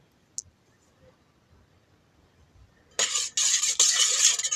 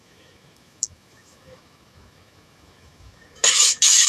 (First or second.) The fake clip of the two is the second